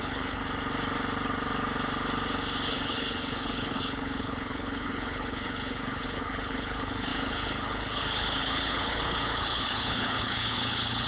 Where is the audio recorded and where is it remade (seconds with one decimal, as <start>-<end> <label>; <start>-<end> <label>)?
0.0-0.4 remade; 0.4-2.7 recorded; 2.7-11.1 remade